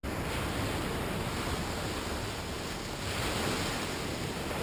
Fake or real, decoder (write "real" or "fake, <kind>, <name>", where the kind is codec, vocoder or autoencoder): real